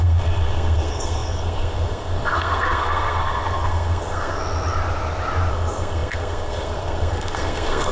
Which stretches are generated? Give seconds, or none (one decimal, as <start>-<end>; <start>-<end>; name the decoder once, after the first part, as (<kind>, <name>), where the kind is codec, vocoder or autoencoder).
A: 0.0-4.4 (codec, SNAC); 5.5-7.9